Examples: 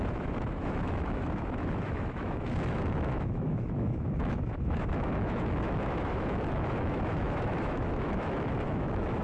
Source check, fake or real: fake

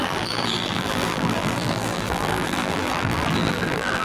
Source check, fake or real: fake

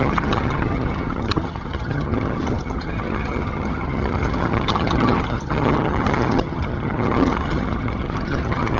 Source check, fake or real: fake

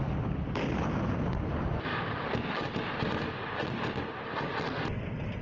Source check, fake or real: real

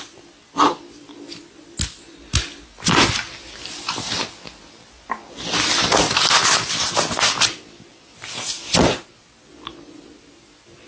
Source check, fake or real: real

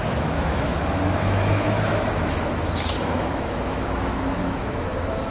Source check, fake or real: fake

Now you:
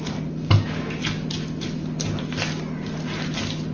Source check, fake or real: real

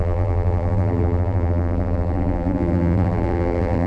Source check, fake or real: fake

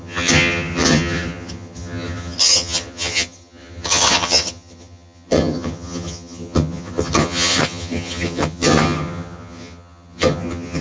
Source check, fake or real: fake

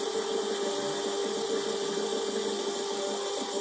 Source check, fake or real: real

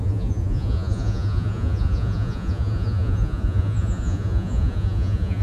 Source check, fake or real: fake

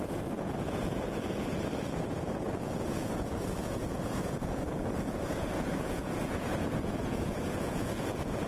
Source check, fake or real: fake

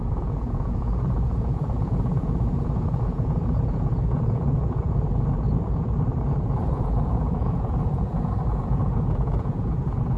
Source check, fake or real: fake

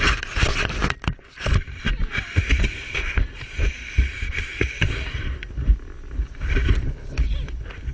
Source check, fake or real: real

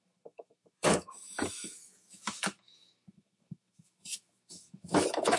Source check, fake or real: fake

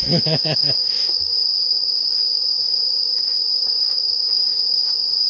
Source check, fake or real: fake